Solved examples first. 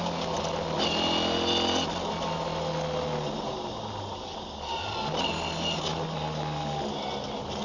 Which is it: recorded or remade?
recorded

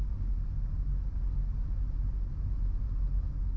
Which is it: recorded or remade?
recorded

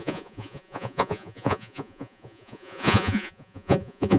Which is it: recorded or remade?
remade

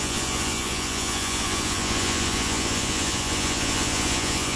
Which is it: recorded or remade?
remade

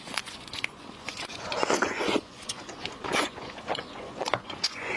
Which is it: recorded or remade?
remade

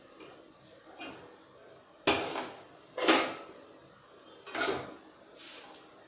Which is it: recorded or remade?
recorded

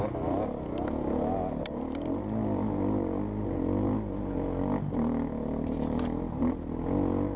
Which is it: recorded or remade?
recorded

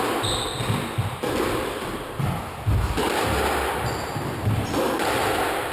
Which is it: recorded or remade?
recorded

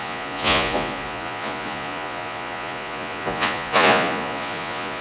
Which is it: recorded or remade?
remade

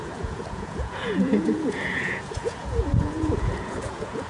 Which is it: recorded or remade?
remade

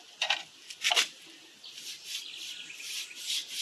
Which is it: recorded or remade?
recorded